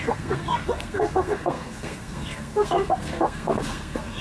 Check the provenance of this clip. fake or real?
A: fake